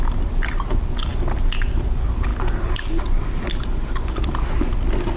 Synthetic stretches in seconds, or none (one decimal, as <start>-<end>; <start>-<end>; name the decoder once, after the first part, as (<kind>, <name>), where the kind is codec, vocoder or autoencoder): 0.0-1.1 (vocoder, BigVGAN v2); 1.9-5.2